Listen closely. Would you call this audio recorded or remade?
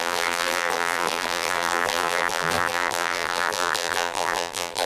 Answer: remade